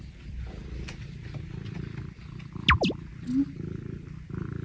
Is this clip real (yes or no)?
yes